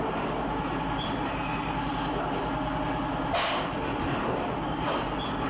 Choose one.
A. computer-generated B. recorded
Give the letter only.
B